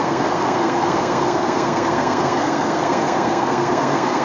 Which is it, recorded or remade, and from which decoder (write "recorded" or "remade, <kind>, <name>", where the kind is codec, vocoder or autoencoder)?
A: remade, codec, SNAC